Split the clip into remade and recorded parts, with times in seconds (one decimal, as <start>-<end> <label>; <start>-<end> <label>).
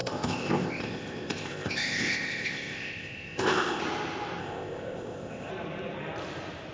0.0-3.8 remade; 3.8-4.4 recorded; 4.4-5.5 remade; 5.5-6.7 recorded